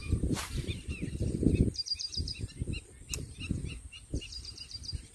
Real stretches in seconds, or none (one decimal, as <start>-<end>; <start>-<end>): 2.6-4.1